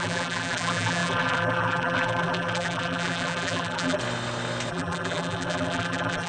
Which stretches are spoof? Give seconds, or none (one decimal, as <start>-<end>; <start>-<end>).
0.0-4.0; 4.7-6.3